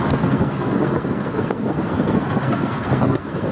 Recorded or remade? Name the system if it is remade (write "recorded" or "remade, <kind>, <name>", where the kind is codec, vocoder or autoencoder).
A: remade, codec, SNAC